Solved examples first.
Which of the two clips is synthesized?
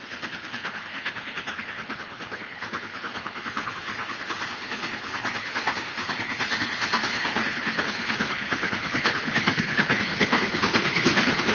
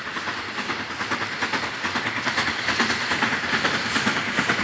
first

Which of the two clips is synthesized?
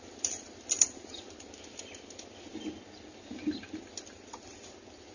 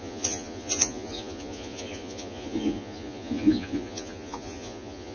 second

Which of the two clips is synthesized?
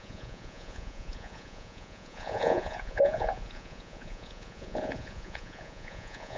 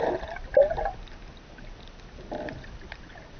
first